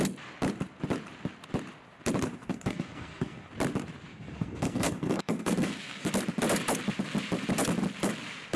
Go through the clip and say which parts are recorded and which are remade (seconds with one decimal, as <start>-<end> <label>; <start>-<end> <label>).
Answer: 0.0-2.4 recorded; 2.4-3.5 remade; 3.5-4.1 recorded; 4.1-6.1 remade; 6.1-8.6 recorded